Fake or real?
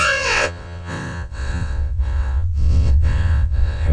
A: fake